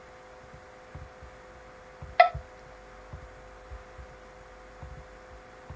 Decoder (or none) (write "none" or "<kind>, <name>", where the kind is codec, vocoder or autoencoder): none